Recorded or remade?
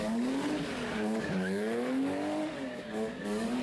remade